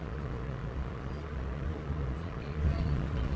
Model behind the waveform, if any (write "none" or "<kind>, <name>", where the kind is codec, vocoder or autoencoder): vocoder, Vocos